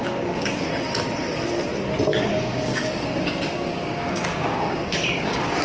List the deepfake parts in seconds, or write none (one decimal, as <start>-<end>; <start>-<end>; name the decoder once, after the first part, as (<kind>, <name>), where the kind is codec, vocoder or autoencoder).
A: 0.0-0.7 (codec, DAC); 2.1-5.6